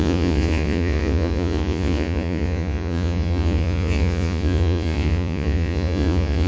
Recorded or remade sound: remade